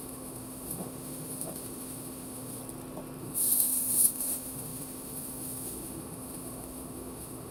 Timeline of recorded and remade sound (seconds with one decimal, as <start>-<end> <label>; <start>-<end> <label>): 0.0-2.6 remade; 2.6-3.2 recorded; 3.2-7.5 remade